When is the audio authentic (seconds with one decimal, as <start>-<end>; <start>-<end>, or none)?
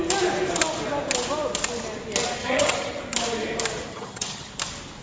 0.0-2.4; 3.0-3.9; 4.5-5.0